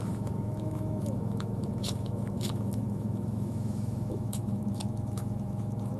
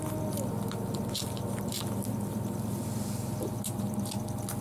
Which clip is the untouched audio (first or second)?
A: second